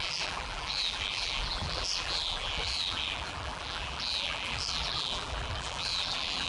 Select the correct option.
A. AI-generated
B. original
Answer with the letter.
A